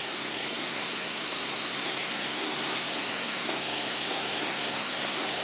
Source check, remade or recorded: remade